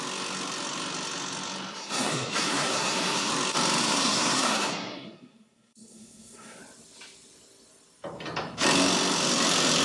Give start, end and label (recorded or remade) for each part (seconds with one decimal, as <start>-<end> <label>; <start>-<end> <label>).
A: 0.0-1.7 recorded; 1.7-3.3 remade; 3.3-3.8 recorded; 3.8-6.6 remade; 6.6-9.8 recorded